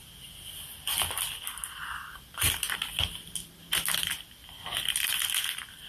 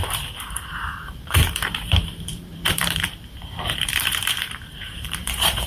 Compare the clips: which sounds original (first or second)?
first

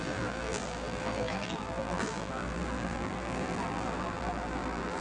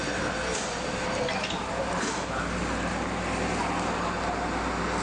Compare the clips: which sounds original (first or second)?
second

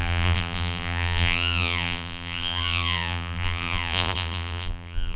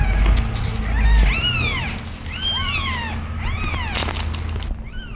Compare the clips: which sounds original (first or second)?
second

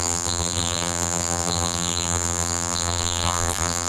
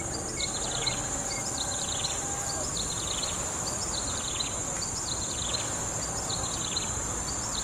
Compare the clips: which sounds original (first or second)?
second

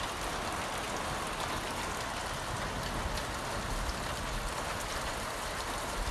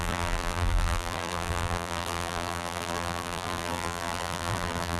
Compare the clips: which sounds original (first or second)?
first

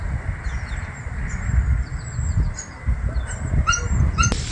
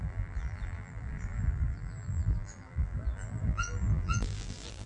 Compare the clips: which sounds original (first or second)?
first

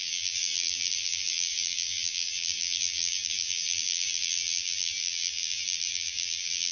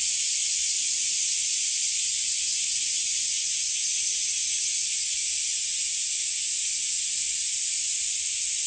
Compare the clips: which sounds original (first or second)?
second